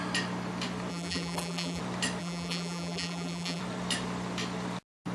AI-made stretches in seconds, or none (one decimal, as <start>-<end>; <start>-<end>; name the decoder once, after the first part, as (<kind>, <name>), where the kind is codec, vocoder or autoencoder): 0.9-1.8 (vocoder, BigVGAN v2); 2.2-3.6